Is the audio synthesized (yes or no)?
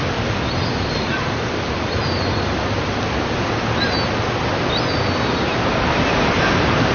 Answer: no